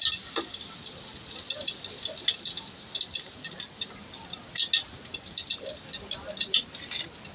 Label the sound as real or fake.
real